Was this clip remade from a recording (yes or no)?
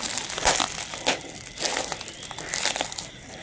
no